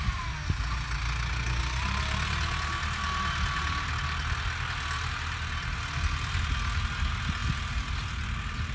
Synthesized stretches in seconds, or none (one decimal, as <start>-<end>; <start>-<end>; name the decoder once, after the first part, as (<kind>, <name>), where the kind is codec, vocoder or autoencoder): none